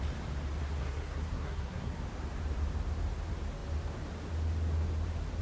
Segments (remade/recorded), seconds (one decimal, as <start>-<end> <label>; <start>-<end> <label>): 0.0-0.6 recorded; 0.6-2.0 remade; 2.0-5.4 recorded